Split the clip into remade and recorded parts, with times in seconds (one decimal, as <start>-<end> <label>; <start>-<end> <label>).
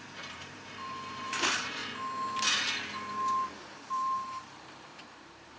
0.0-1.8 remade; 1.8-3.6 recorded; 3.6-5.6 remade